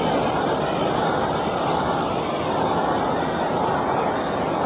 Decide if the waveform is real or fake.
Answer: real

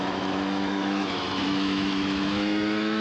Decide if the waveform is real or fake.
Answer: fake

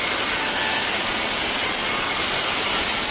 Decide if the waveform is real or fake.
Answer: real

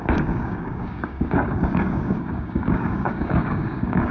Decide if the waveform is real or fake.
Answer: fake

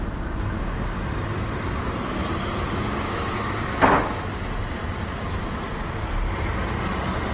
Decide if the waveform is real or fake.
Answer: real